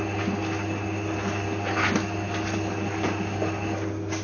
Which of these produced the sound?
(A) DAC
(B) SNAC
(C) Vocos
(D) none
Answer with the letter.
D